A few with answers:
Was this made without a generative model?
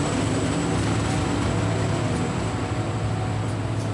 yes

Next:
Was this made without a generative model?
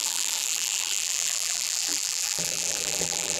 no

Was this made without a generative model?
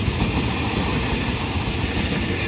yes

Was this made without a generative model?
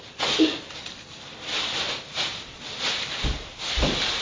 yes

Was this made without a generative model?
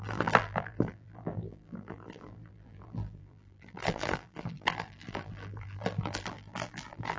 no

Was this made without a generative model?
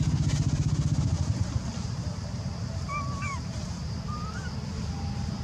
no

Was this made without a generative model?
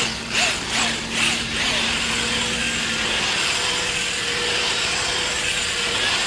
yes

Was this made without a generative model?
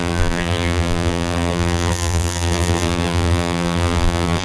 no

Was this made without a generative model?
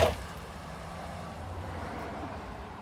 no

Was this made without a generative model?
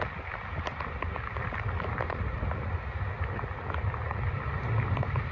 no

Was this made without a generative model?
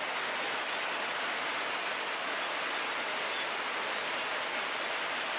yes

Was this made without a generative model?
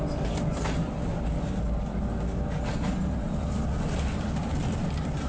yes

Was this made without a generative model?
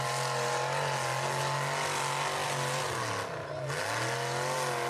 yes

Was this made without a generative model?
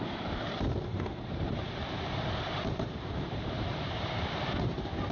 no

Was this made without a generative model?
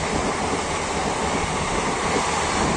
yes